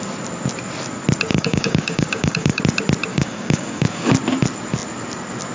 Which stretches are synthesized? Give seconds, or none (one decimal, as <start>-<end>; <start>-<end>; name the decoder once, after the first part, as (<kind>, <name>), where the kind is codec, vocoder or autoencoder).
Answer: 1.3-2.6 (codec, DAC); 3.1-4.1